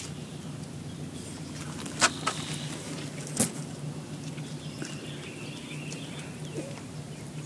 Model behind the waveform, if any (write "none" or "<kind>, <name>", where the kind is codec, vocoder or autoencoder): none